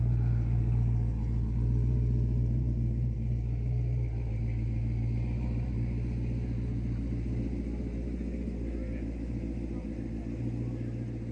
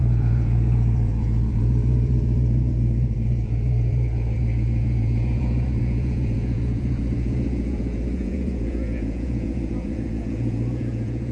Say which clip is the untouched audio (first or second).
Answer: first